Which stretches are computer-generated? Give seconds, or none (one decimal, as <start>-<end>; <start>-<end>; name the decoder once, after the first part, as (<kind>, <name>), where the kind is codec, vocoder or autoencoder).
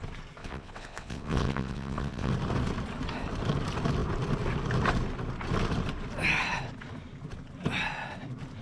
0.4-2.3 (vocoder, WaveNeXt)